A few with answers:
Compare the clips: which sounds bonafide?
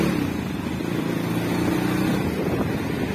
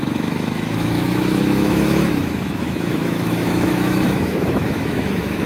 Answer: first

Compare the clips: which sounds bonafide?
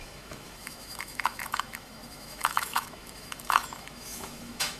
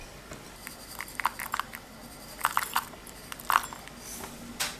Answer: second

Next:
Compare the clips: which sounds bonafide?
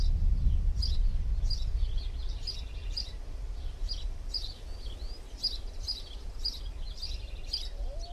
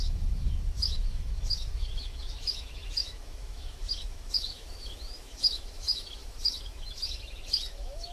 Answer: first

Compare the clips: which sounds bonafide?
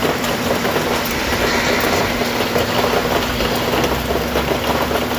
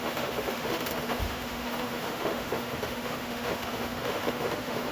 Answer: first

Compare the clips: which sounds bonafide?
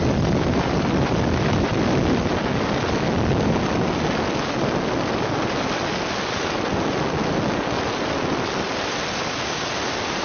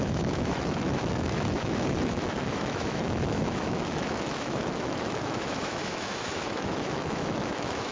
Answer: first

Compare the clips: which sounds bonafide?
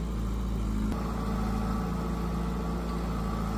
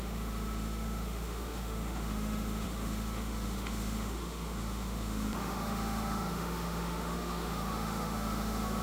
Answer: first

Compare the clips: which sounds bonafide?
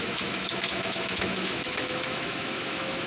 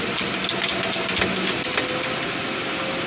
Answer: second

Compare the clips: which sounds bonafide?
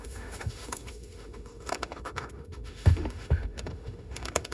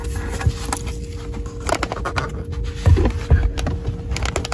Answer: second